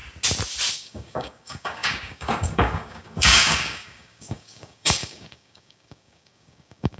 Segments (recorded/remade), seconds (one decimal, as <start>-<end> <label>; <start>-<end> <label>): 0.0-0.7 recorded; 0.7-7.0 remade